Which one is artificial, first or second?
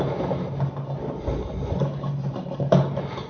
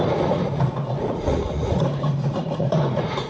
second